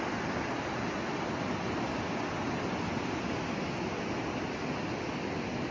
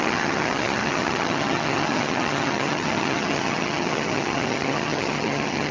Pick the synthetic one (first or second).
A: second